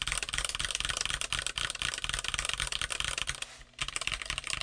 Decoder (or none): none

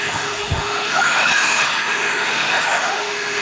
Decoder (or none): autoencoder, DAC-VAE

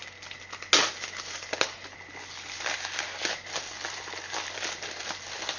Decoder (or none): none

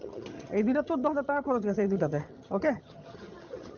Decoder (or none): vocoder, HiFi-GAN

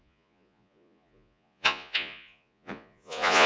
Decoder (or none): vocoder, Vocos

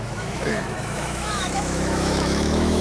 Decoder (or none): autoencoder, DAC-VAE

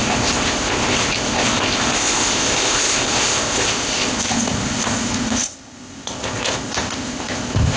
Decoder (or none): codec, ZipCodec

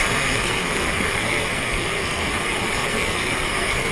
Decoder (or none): codec, SNAC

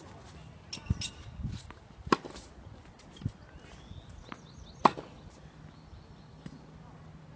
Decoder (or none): none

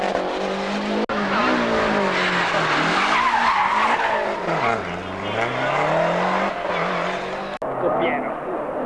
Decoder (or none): none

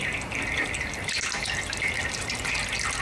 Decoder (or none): none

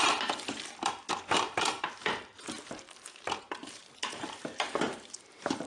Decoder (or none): vocoder, BigVGAN v2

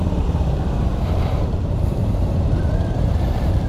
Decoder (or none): vocoder, BigVGAN v2